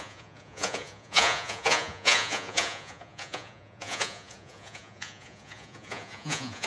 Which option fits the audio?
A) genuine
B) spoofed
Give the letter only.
B